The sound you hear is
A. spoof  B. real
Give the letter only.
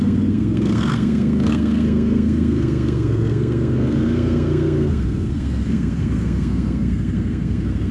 A